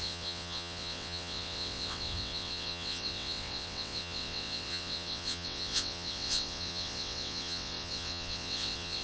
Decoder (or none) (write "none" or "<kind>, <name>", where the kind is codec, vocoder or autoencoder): vocoder, WaveNeXt